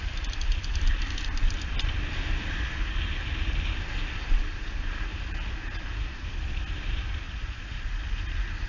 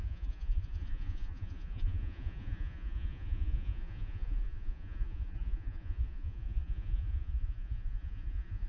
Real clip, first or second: first